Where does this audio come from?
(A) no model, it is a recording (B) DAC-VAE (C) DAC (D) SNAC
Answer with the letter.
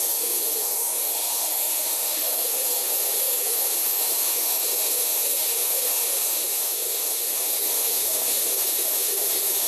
B